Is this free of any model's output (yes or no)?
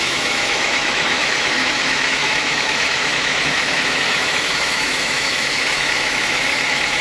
no